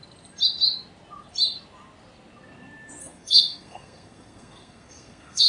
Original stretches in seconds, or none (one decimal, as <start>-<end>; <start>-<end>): 0.0-3.0

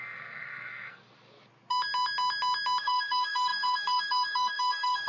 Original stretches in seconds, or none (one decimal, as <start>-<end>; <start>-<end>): 1.0-2.8

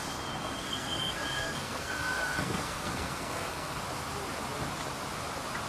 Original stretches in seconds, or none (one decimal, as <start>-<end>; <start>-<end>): 0.0-0.4; 3.8-5.7

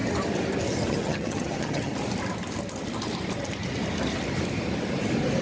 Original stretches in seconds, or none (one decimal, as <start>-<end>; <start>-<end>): 0.0-0.9; 1.9-5.4